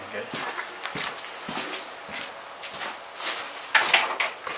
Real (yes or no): yes